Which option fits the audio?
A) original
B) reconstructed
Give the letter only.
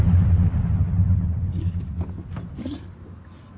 A